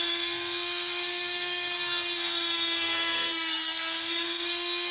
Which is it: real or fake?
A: fake